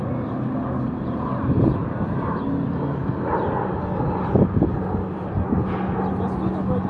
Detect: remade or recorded recorded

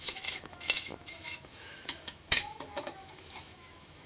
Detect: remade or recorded remade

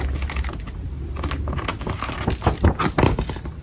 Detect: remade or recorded recorded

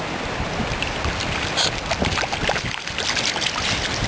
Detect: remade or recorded recorded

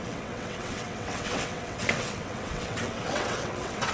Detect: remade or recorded remade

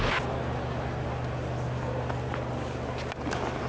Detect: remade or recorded recorded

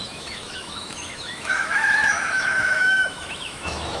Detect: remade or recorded remade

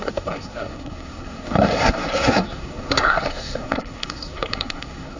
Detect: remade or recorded remade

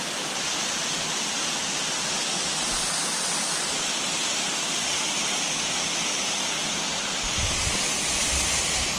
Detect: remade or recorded recorded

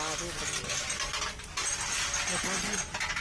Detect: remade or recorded recorded